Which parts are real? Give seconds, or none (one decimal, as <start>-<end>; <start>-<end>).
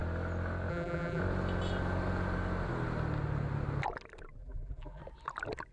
0.0-0.7; 1.2-4.4; 5.0-5.7